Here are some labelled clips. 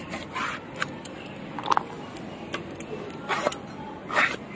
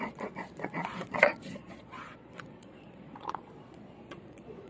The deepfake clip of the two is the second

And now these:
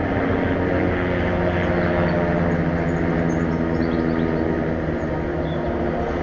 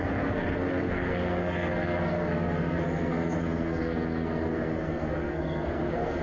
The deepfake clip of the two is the second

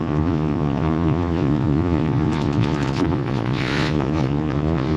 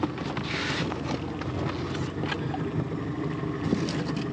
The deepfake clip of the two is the first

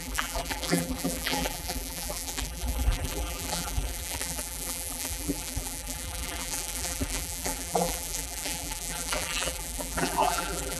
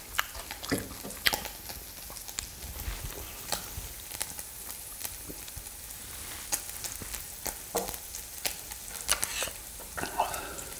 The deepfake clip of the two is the first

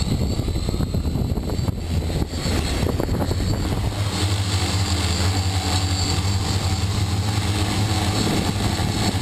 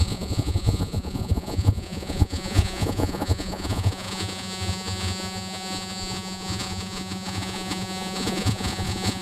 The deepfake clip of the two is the second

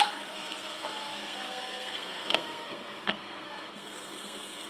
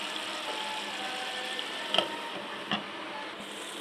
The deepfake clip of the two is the first